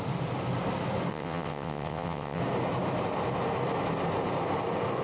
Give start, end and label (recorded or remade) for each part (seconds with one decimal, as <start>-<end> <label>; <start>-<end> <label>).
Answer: 0.0-1.1 recorded; 1.1-2.4 remade; 2.4-5.0 recorded